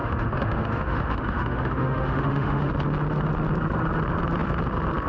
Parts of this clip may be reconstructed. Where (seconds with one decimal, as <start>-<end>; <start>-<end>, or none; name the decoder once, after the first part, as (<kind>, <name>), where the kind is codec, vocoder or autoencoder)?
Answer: 0.0-2.7 (autoencoder, DAC-VAE)